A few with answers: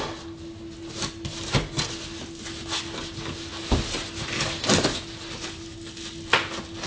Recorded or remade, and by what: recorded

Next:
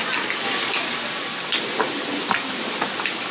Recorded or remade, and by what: recorded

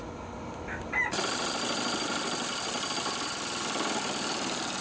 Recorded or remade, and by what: recorded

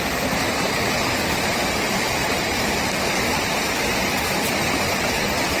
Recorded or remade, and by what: recorded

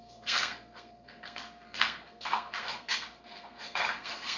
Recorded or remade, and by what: remade, codec, SNAC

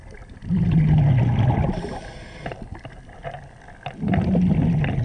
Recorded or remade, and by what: recorded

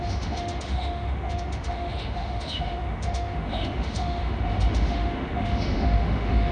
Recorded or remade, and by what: remade, autoencoder, DAC-VAE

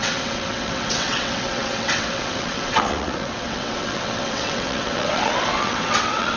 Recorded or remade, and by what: remade, vocoder, WaveNeXt